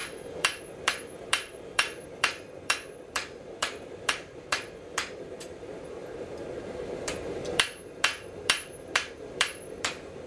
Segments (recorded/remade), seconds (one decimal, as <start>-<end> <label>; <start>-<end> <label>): 0.0-10.3 remade